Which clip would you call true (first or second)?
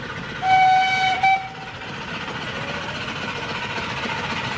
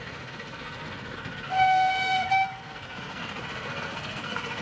first